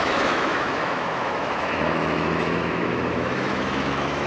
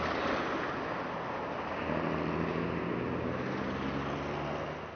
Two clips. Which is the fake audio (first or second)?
first